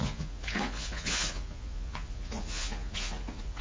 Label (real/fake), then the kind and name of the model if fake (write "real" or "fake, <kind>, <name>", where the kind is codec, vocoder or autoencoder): fake, vocoder, Vocos